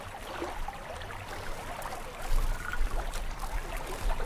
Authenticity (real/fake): real